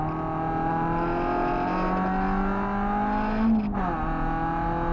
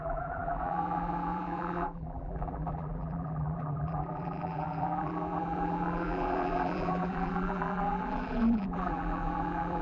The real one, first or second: first